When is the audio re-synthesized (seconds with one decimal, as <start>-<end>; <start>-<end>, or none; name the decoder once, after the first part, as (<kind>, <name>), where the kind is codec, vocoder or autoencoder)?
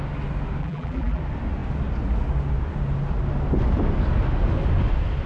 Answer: 0.6-1.2 (vocoder, BigVGAN v2)